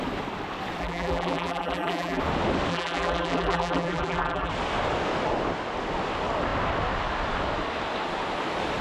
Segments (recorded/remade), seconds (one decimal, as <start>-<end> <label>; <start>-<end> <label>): 0.0-0.8 recorded; 0.8-2.2 remade; 2.2-2.7 recorded; 2.7-4.5 remade; 4.5-8.8 recorded